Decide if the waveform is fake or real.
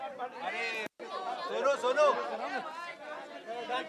real